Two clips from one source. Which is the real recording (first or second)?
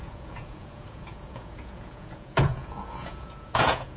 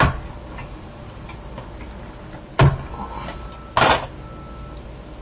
second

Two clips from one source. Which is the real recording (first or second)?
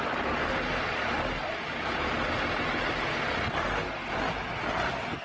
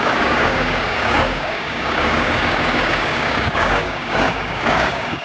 first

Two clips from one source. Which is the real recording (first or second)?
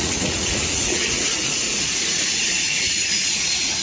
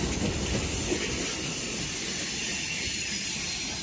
second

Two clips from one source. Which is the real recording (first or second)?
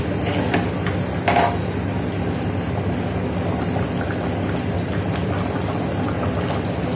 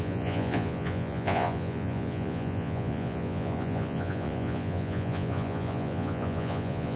first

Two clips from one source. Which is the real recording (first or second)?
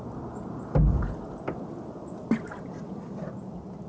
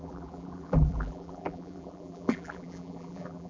first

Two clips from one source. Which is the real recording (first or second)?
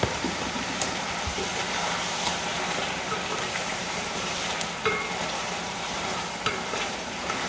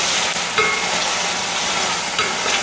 second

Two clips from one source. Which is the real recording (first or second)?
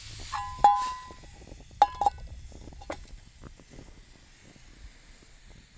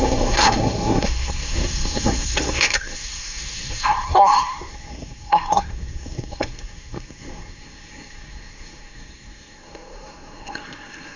first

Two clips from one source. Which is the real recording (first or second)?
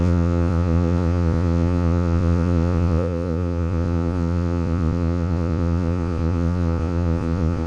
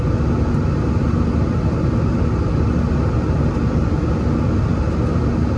second